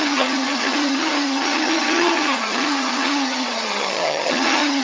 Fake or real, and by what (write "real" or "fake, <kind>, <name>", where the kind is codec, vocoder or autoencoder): fake, vocoder, HiFi-GAN